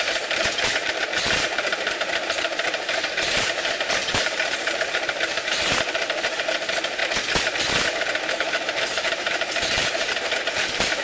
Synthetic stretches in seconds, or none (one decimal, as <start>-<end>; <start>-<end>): 0.0-7.0; 8.3-11.0